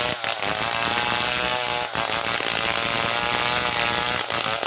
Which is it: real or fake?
real